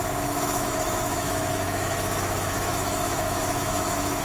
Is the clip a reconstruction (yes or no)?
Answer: yes